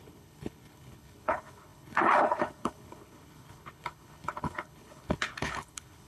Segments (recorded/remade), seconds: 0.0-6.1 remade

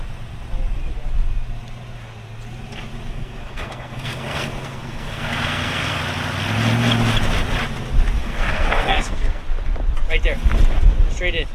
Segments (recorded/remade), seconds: 0.0-3.1 recorded; 3.1-6.0 remade; 6.0-8.2 recorded; 8.2-9.4 remade; 9.4-11.5 recorded

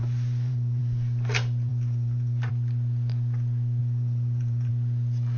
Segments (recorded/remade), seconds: 0.0-0.8 remade; 0.8-1.7 recorded; 1.7-2.5 remade; 2.5-3.8 recorded; 3.8-4.7 remade; 4.7-5.4 recorded

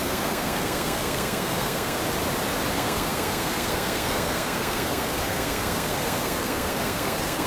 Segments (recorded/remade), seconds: 0.0-2.0 remade; 2.0-2.7 recorded; 2.7-7.5 remade